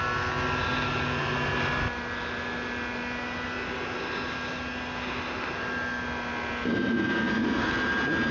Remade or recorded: recorded